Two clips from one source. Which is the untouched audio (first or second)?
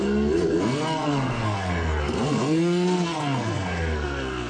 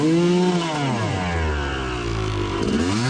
second